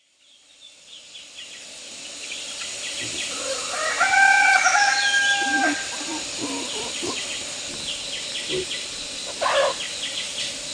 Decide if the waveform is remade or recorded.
recorded